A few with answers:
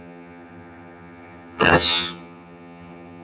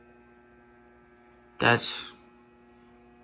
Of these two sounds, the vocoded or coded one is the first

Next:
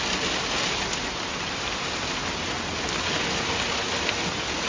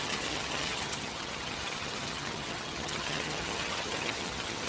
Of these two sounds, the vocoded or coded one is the second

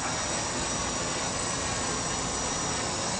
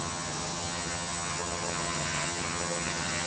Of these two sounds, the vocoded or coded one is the second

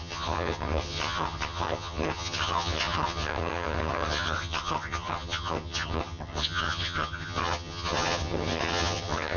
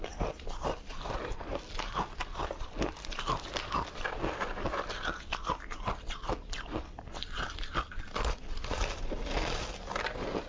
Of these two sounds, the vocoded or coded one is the first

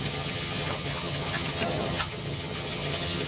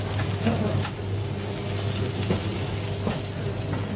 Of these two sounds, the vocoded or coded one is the first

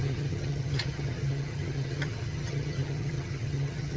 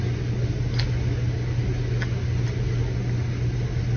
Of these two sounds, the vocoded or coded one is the first